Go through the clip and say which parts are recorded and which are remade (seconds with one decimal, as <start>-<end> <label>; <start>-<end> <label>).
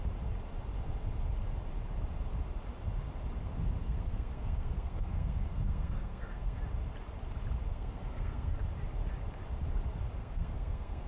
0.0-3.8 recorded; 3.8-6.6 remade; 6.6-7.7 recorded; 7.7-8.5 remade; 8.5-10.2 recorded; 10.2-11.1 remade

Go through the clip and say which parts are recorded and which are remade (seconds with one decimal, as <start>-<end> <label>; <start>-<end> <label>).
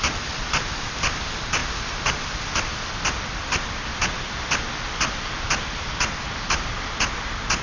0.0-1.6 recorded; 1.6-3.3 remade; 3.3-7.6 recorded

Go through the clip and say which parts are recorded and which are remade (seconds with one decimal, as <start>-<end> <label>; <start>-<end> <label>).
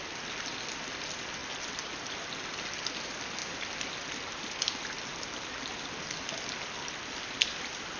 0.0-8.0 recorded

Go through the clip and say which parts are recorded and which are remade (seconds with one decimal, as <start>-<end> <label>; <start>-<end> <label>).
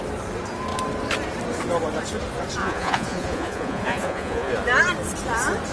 0.0-2.6 recorded; 2.6-4.5 remade; 4.5-5.7 recorded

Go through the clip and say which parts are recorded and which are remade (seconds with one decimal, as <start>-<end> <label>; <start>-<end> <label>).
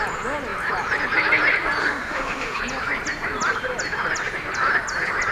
0.0-1.8 recorded; 1.8-2.6 remade; 2.6-5.3 recorded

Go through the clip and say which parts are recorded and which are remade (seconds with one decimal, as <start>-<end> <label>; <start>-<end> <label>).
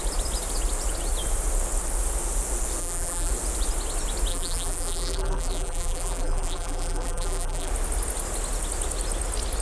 0.0-2.8 recorded; 2.8-3.3 remade; 3.3-4.3 recorded; 4.3-7.7 remade; 7.7-9.6 recorded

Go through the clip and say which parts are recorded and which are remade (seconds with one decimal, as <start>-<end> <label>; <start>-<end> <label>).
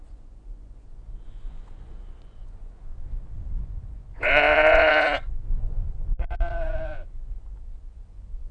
0.0-2.9 remade; 2.9-3.5 recorded; 3.5-8.5 remade